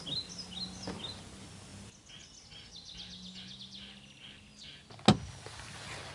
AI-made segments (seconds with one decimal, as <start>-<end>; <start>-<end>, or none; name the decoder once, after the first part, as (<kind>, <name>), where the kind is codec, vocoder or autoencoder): none